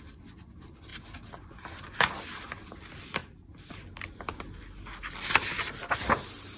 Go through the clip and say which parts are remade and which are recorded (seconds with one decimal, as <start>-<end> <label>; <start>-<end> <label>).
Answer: 0.0-6.6 recorded